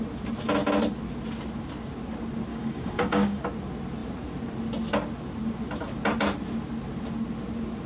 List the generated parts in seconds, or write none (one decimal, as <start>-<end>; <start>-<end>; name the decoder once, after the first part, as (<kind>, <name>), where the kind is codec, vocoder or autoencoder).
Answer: 2.5-3.4 (codec, DAC)